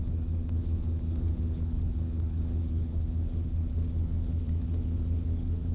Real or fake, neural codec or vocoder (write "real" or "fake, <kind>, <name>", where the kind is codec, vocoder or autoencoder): fake, codec, HILCodec